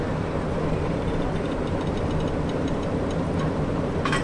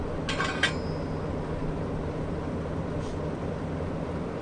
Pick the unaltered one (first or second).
second